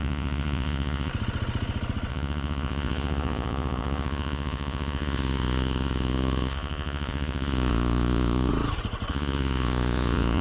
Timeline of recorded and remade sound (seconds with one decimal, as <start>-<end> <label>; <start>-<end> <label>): 0.0-1.1 remade; 1.1-2.1 recorded; 2.1-8.5 remade; 8.5-9.1 recorded; 9.1-10.4 remade